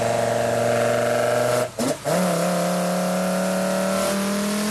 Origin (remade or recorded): recorded